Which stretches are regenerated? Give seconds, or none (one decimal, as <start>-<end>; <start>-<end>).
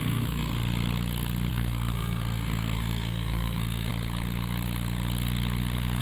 0.0-0.5; 1.5-3.9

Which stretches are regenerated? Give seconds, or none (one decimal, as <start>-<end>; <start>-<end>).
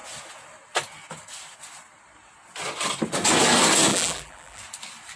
3.9-4.6